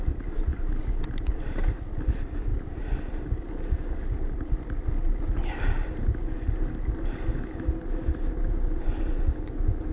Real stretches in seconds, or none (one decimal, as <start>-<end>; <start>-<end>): 0.0-9.9